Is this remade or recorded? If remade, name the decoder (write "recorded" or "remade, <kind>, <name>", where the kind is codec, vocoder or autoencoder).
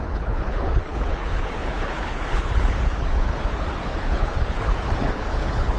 remade, codec, HILCodec